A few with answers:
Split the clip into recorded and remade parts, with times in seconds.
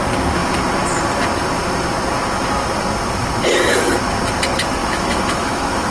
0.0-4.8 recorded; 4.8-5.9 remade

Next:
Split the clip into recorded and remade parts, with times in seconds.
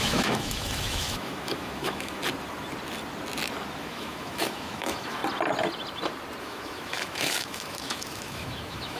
0.0-2.2 remade; 2.2-3.8 recorded; 3.8-5.2 remade; 5.2-6.4 recorded; 6.4-9.0 remade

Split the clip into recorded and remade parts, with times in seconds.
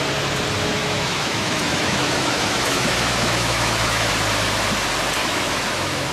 0.0-0.8 recorded; 0.8-4.1 remade; 4.1-5.2 recorded; 5.2-6.1 remade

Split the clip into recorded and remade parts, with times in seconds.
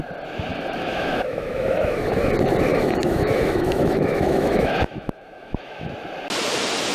0.0-0.5 recorded; 0.5-2.3 remade; 2.3-2.7 recorded; 2.7-5.9 remade; 5.9-6.9 recorded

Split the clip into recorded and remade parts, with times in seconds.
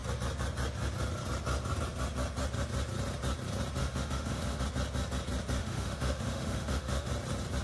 0.0-3.8 recorded; 3.8-4.6 remade; 4.6-5.6 recorded; 5.6-7.1 remade; 7.1-7.6 recorded